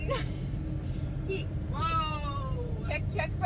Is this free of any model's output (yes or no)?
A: no